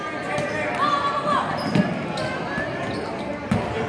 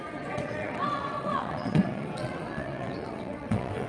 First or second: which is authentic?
first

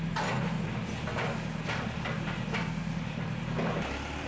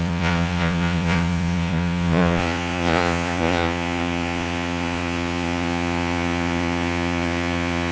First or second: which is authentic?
first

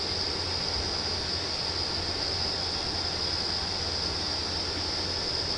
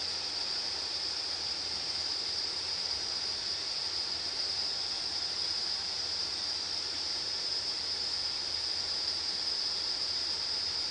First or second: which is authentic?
first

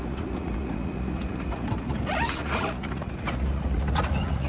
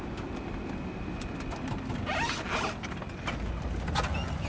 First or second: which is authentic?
second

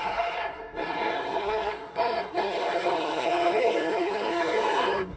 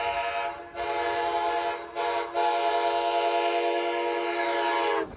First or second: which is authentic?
second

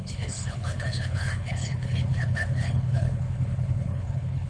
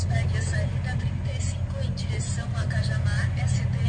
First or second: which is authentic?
second